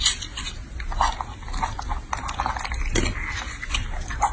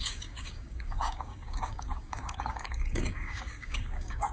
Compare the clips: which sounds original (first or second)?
first